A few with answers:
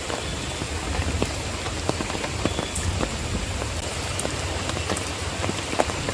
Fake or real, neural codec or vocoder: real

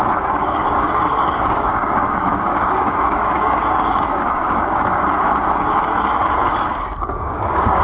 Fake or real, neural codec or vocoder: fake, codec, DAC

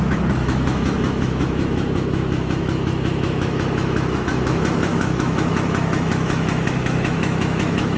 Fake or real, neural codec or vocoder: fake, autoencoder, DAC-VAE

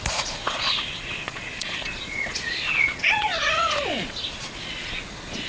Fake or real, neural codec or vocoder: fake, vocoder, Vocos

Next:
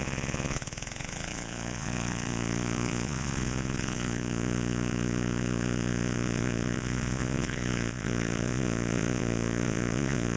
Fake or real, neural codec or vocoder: fake, vocoder, Vocos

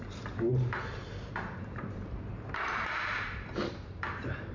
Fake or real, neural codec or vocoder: fake, vocoder, BigVGAN v2